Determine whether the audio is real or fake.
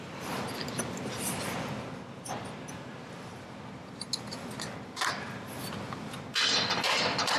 real